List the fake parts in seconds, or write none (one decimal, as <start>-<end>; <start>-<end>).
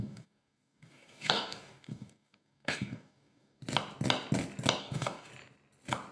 0.0-3.6; 4.8-5.3